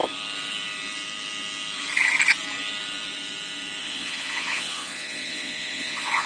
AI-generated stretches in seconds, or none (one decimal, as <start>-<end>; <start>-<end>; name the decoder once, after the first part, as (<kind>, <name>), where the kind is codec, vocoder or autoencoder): 3.8-6.3 (vocoder, Vocos)